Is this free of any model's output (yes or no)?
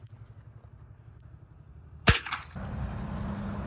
yes